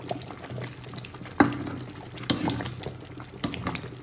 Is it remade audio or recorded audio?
recorded